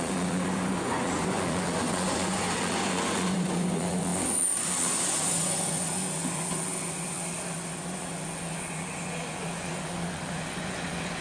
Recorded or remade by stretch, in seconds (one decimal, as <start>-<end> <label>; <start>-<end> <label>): 0.0-11.2 remade

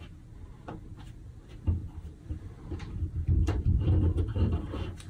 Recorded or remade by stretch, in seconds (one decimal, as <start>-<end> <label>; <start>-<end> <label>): 0.0-1.8 recorded; 1.8-5.1 remade